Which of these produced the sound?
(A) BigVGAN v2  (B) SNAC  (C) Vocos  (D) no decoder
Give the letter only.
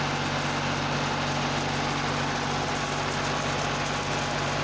D